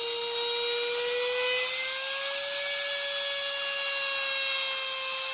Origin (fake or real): real